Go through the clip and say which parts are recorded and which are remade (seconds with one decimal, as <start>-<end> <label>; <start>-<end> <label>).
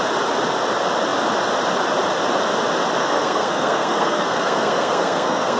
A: 0.0-3.0 recorded; 3.0-5.6 remade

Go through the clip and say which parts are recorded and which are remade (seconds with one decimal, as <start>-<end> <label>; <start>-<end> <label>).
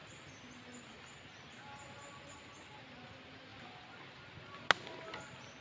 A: 0.0-5.6 recorded